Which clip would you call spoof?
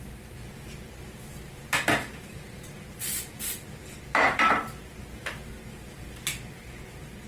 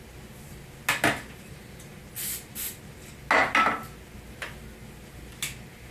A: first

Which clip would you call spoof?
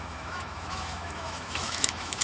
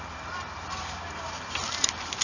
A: first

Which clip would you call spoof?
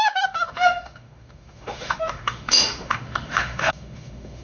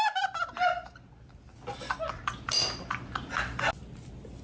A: first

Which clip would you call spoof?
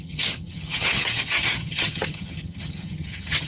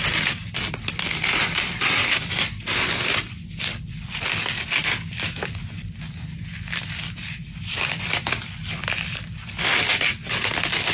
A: first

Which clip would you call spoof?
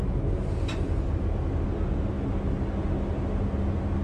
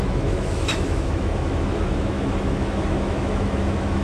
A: second